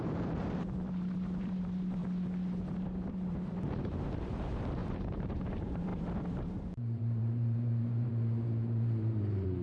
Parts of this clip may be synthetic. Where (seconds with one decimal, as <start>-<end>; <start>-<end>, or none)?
0.0-2.0; 2.7-9.6